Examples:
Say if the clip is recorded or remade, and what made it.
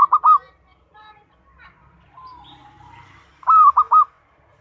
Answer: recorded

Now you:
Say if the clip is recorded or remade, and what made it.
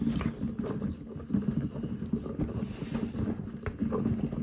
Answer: recorded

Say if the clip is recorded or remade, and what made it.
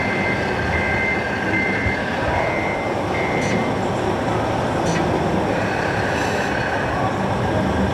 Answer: recorded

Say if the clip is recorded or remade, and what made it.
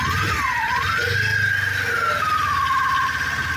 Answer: recorded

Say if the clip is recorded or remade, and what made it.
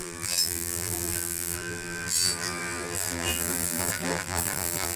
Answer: remade, vocoder, BigVGAN v2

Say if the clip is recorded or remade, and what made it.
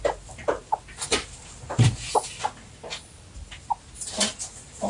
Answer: recorded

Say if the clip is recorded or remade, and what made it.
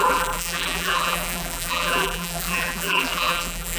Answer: remade, vocoder, BigVGAN v2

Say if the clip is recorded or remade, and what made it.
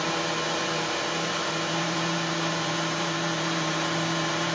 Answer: remade, vocoder, BigVGAN v2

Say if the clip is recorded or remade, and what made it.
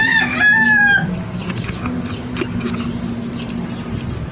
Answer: recorded